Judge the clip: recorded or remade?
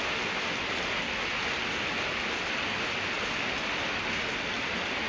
recorded